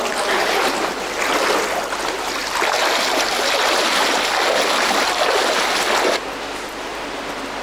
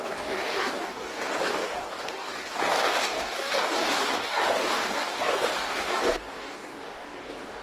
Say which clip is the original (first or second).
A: first